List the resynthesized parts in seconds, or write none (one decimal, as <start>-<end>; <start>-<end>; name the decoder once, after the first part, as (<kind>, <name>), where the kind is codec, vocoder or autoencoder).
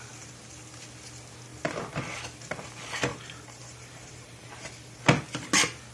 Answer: 3.1-5.0 (vocoder, BigVGAN v2)